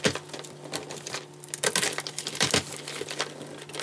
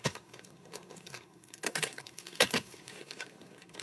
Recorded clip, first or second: first